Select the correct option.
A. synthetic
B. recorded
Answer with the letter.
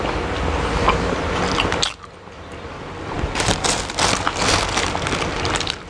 B